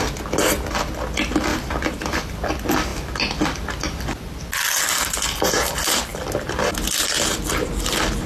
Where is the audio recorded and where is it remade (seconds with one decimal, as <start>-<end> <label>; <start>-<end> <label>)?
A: 0.0-1.5 recorded; 1.5-2.2 remade; 2.2-8.3 recorded